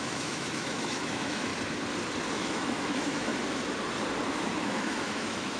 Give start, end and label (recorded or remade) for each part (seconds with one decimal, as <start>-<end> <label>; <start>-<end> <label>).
0.0-1.5 remade; 1.5-2.3 recorded; 2.3-3.3 remade; 3.3-4.6 recorded; 4.6-5.6 remade